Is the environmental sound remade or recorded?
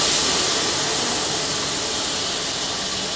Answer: recorded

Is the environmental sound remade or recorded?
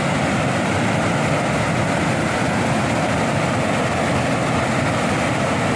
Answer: recorded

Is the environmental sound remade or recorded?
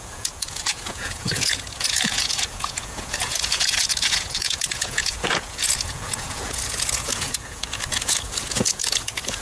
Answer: remade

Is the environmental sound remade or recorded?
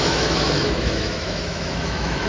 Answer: remade